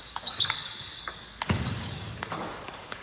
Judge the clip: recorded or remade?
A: remade